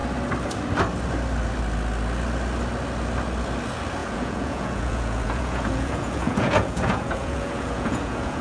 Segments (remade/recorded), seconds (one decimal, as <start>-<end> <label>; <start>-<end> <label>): 0.0-4.0 recorded; 4.0-8.4 remade